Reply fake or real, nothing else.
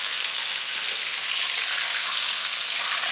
real